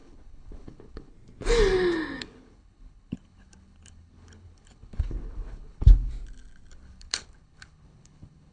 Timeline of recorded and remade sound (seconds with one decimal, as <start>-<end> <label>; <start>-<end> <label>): 0.0-1.1 remade; 1.1-2.2 recorded; 2.2-6.1 remade; 6.1-6.7 recorded; 6.7-8.5 remade